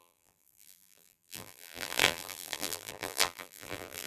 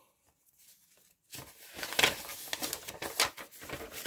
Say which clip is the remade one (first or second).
first